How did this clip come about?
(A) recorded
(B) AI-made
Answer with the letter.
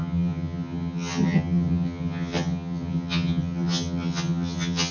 B